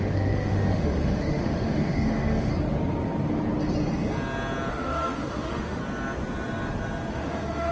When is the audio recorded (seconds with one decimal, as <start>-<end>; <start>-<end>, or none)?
2.5-4.7; 5.8-7.1